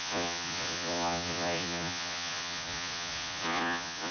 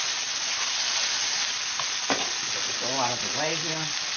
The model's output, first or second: first